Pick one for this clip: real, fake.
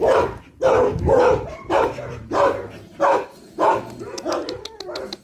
real